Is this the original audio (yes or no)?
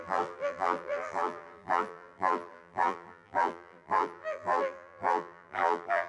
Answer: no